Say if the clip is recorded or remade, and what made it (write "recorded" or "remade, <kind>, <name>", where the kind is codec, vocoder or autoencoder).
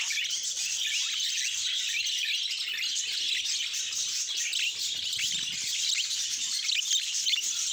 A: recorded